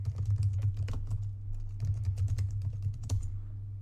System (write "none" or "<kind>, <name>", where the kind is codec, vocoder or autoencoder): none